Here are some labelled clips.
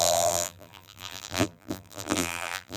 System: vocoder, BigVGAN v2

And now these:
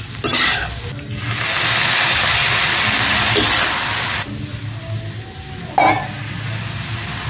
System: none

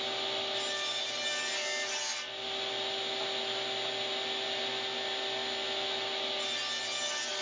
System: none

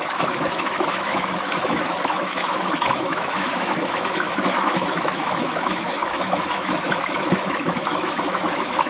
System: autoencoder, DAC-VAE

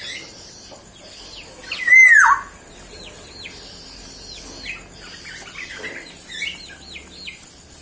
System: none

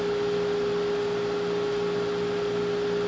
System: none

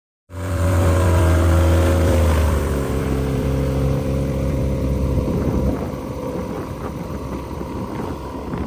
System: vocoder, BigVGAN v2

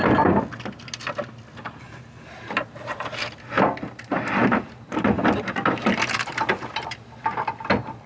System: none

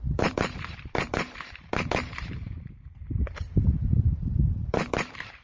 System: vocoder, BigVGAN v2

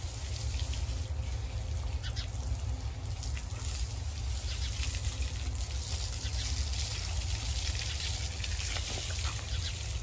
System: none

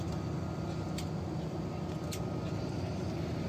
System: none